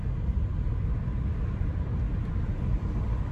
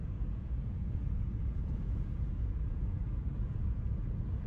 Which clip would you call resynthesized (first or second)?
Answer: second